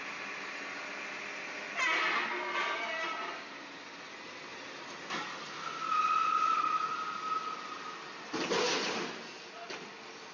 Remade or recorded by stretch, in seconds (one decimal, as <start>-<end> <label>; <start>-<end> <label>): 0.0-10.3 recorded